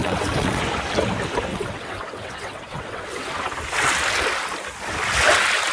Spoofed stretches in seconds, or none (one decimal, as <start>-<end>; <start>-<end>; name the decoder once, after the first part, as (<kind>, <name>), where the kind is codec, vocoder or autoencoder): 0.0-0.6 (vocoder, WaveNeXt); 1.5-3.3

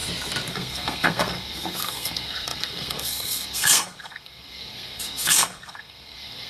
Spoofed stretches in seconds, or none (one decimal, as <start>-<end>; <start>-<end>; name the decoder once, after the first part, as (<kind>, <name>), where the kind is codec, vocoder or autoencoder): 0.5-6.5 (codec, SNAC)